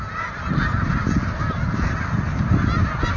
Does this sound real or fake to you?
real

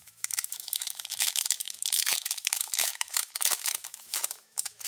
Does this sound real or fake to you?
fake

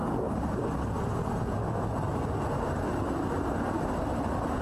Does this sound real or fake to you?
real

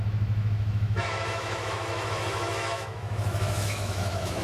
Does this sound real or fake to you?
fake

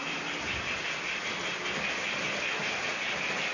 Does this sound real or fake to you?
real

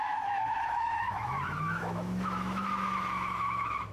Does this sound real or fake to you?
fake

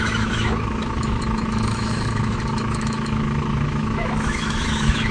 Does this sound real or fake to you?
fake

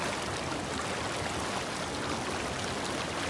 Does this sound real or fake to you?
real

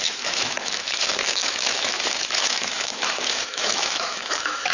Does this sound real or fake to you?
fake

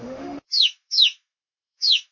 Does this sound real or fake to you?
fake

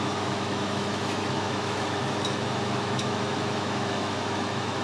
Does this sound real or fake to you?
fake